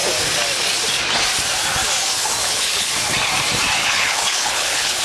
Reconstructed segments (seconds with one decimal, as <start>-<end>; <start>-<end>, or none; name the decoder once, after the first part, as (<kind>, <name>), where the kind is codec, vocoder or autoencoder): 2.4-2.9 (codec, HILCodec); 3.8-5.0